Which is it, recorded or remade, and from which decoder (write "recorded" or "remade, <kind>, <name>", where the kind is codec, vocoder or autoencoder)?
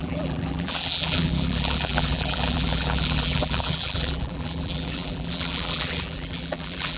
remade, vocoder, BigVGAN v2